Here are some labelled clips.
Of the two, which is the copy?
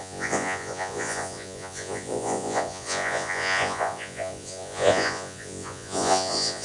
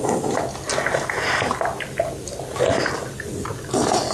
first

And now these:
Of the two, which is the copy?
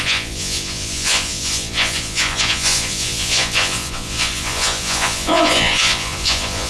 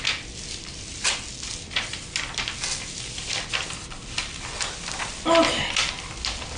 first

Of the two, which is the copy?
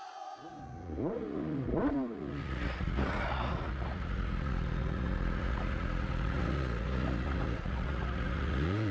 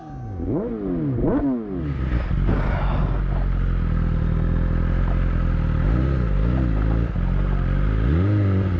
first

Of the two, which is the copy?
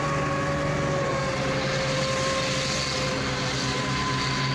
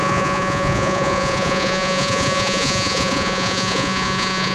second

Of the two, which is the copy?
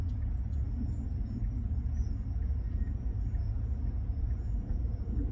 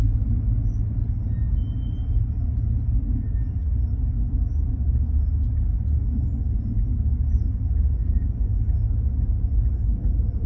first